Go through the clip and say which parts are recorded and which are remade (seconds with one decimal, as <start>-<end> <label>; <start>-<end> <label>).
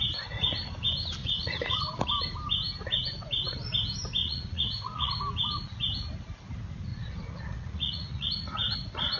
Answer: 0.0-1.2 recorded; 1.2-1.8 remade; 1.8-4.2 recorded; 4.2-5.1 remade; 5.1-6.9 recorded; 6.9-8.3 remade; 8.3-9.2 recorded